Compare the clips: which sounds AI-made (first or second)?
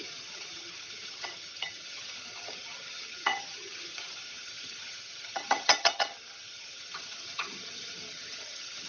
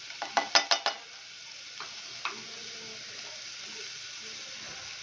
first